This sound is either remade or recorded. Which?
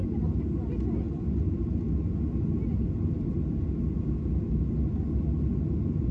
recorded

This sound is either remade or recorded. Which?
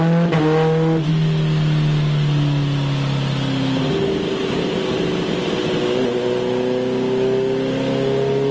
recorded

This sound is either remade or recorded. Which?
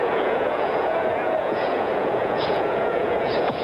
remade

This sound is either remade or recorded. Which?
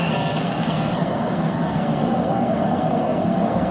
remade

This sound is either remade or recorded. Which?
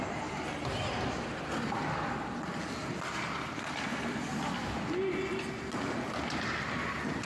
recorded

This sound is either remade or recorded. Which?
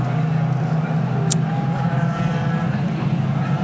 recorded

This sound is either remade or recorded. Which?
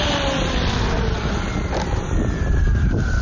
recorded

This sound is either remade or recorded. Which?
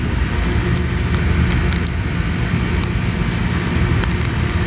recorded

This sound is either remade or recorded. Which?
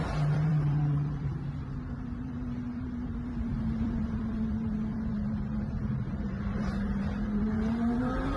remade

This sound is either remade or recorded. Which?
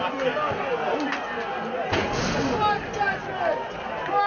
recorded